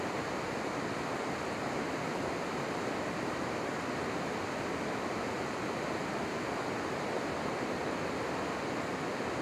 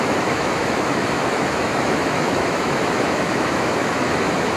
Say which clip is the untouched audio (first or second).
first